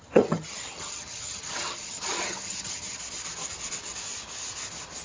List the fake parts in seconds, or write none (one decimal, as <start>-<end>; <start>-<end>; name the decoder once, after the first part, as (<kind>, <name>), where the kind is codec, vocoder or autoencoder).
0.0-3.0 (vocoder, HiFi-GAN)